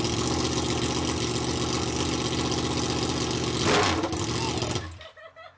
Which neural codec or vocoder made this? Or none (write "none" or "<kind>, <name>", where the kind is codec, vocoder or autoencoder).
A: none